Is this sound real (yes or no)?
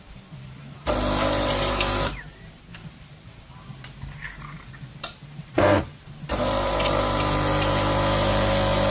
no